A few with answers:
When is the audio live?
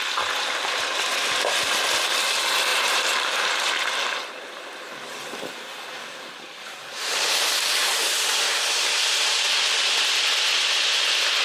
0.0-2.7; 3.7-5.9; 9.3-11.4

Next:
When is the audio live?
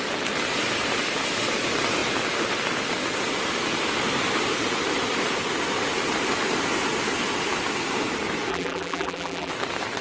0.0-8.5; 9.5-10.0